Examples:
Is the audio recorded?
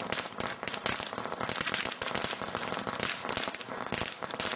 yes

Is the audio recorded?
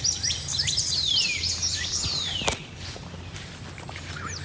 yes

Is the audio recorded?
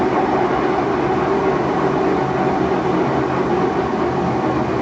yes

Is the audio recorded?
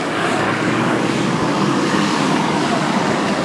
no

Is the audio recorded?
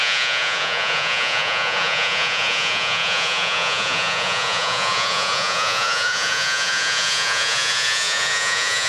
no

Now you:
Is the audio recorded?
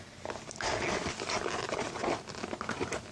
yes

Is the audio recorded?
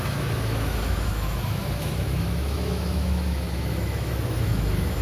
no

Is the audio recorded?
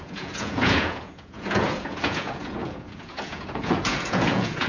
no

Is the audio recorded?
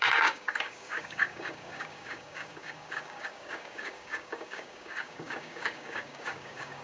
no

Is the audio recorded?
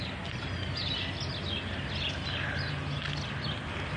yes